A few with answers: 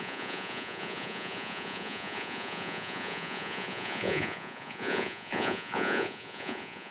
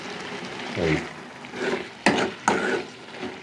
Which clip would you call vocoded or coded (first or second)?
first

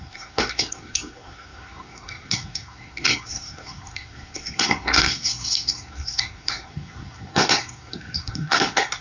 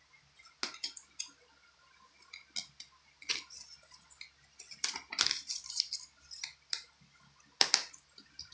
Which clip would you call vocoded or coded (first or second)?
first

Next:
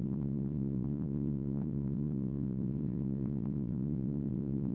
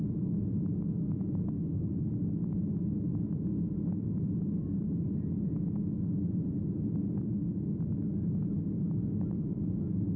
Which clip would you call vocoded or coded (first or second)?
first